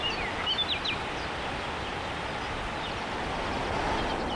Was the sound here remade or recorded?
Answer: recorded